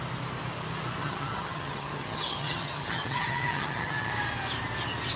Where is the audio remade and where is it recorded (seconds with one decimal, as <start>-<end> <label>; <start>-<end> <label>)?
0.0-1.0 recorded; 1.0-4.1 remade; 4.1-5.2 recorded